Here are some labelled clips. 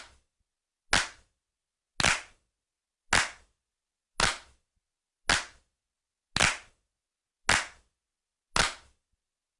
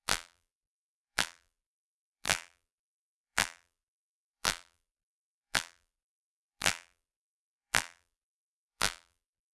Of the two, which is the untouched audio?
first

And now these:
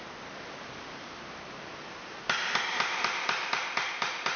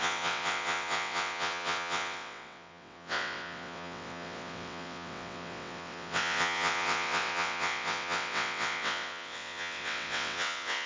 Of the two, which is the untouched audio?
first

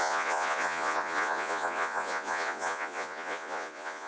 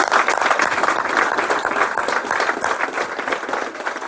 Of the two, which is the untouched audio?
second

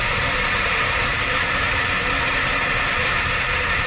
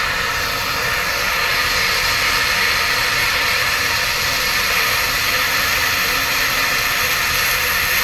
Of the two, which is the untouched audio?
second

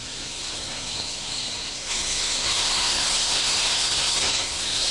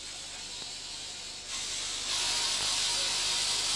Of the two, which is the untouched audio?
second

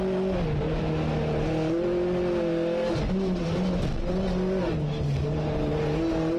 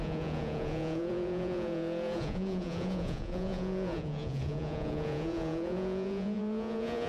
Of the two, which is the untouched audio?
first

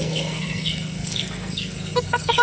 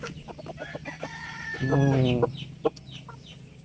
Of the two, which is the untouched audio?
second